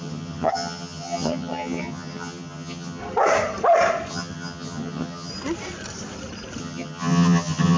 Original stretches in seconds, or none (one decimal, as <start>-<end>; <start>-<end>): 3.0-4.1; 5.3-6.6